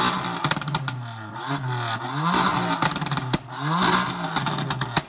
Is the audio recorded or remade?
recorded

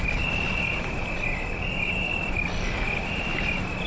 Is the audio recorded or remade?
recorded